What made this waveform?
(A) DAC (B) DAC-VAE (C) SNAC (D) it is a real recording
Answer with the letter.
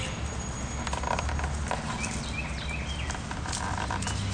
D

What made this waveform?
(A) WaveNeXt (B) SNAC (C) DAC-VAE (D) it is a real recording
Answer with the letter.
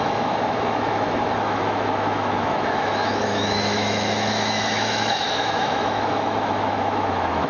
C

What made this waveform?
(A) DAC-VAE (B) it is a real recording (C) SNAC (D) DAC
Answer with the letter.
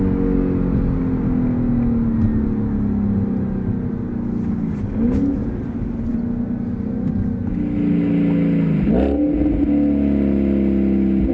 B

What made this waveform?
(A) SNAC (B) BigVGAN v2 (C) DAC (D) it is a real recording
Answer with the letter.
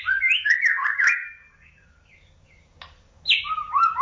C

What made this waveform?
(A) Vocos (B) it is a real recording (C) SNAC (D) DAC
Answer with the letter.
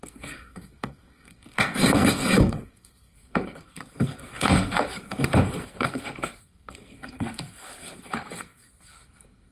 C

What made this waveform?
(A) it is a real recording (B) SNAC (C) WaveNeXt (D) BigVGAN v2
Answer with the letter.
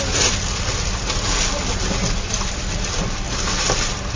A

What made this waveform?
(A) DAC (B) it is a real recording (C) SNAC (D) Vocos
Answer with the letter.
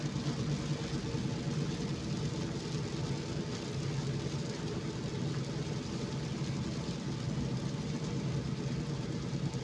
B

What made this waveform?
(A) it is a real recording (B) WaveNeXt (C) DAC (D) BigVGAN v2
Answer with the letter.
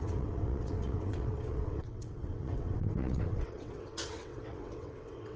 B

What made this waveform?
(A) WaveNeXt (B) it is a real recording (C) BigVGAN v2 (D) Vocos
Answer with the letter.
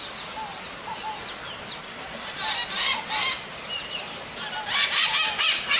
B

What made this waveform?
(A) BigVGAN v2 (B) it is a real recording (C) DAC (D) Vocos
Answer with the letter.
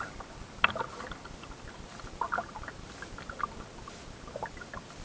B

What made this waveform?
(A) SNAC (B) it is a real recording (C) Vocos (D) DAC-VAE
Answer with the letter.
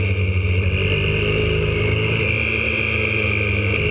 B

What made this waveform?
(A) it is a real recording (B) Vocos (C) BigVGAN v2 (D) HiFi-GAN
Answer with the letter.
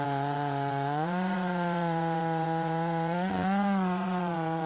B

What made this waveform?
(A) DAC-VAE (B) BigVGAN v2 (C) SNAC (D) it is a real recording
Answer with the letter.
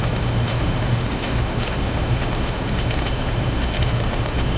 A